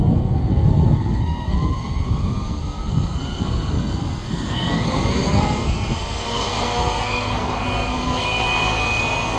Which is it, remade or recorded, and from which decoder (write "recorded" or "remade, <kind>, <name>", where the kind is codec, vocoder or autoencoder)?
remade, codec, SNAC